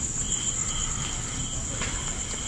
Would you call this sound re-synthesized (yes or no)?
no